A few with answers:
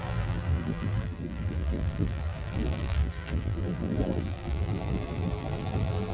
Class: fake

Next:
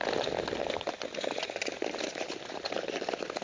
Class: real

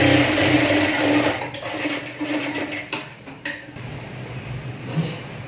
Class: fake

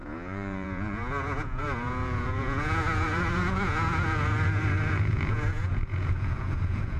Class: fake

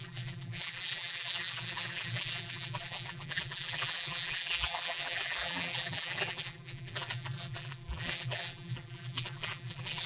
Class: fake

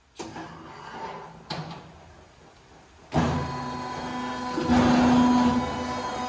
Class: real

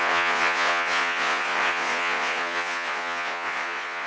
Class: fake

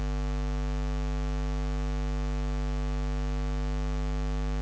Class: real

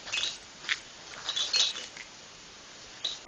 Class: real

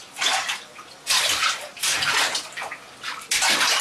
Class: real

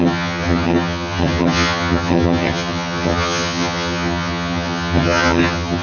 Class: fake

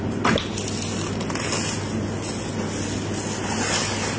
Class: real